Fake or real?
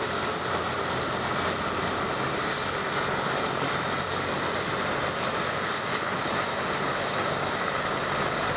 real